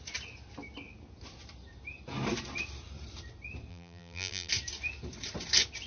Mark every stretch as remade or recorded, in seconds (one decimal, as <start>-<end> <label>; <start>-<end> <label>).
0.0-3.7 recorded; 3.7-4.5 remade; 4.5-5.9 recorded